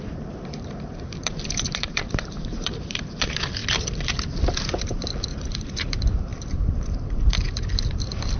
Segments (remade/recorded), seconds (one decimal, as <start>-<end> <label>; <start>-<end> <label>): 0.0-3.6 remade; 3.6-4.7 recorded; 4.7-8.4 remade